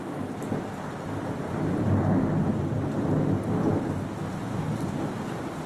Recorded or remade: recorded